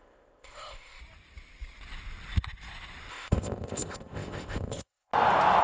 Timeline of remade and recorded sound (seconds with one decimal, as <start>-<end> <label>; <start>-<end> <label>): 0.0-1.0 remade; 1.0-3.1 recorded; 3.1-5.1 remade; 5.1-5.6 recorded